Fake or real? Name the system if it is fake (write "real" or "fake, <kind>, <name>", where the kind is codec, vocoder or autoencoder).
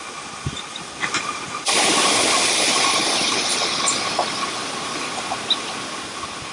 real